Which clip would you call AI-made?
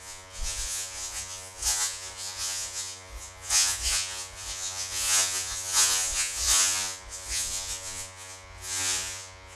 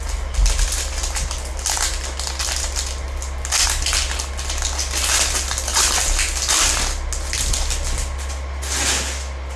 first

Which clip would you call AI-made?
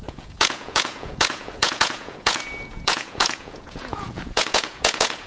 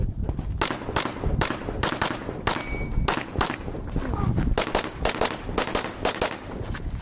first